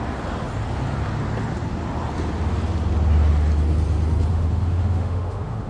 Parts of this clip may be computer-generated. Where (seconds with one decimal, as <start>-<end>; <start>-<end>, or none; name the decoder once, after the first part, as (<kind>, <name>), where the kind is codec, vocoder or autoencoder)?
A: 4.3-5.7 (autoencoder, DAC-VAE)